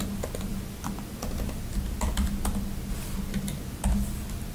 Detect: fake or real real